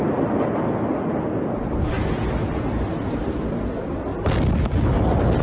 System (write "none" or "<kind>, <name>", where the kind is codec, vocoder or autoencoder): none